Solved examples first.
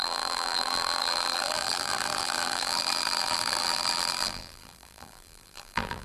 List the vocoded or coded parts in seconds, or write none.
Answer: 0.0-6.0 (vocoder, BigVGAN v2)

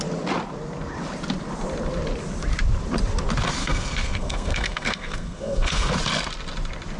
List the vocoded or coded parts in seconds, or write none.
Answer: 3.6-5.9 (codec, SNAC)

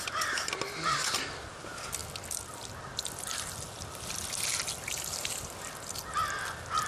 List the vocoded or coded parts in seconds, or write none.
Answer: none

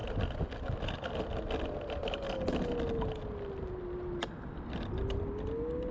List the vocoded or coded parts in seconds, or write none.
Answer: none

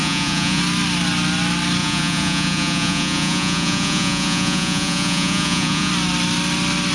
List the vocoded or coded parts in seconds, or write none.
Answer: 0.0-0.6 (vocoder, Vocos); 1.8-5.9

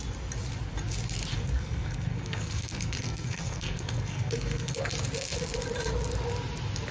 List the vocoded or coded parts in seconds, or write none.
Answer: 1.3-4.9 (codec, SNAC)